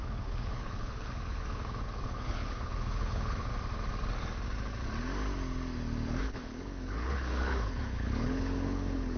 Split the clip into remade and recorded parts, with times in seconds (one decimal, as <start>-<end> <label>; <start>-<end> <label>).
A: 0.0-3.5 remade; 3.5-6.2 recorded; 6.2-9.2 remade

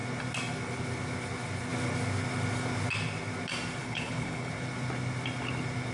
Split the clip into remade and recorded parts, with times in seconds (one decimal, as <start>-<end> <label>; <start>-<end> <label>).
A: 0.0-3.8 recorded; 3.8-4.5 remade; 4.5-5.9 recorded